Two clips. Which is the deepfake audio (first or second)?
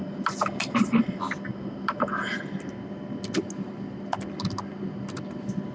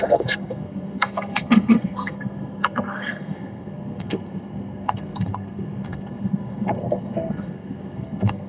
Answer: second